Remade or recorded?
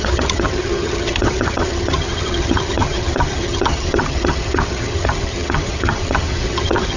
remade